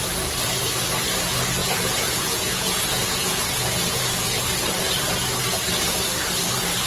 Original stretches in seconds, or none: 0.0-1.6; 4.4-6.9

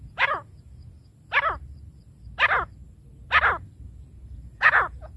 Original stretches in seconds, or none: 1.1-4.0

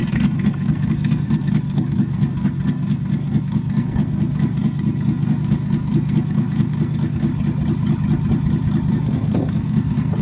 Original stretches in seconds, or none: 7.3-8.9

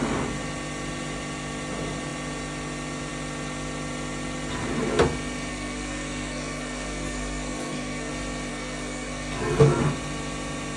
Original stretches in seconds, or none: 0.0-5.5; 8.1-8.5; 9.8-10.8

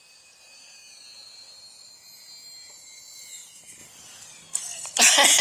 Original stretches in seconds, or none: 0.0-5.4

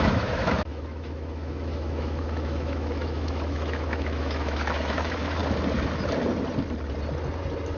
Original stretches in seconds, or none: 5.4-7.8